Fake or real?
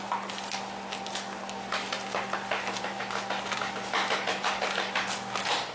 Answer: real